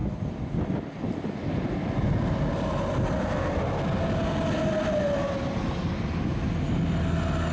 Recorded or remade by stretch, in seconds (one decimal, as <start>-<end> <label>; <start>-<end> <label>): 0.0-7.5 recorded